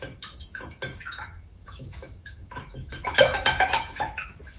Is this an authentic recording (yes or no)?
no